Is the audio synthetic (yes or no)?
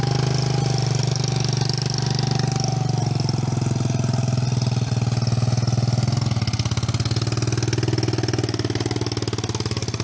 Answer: no